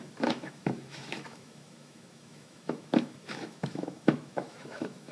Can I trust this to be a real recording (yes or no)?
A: no